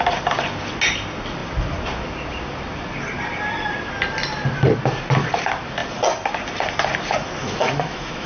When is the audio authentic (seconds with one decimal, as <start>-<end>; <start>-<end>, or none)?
0.0-7.4